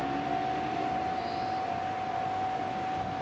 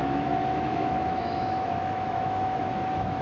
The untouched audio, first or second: first